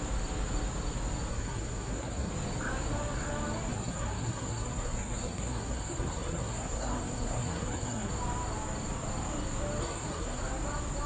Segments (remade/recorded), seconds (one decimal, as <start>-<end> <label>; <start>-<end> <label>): 0.0-1.3 recorded; 1.3-2.3 remade; 2.3-3.7 recorded; 3.7-8.1 remade; 8.1-9.8 recorded; 9.8-10.4 remade; 10.4-11.1 recorded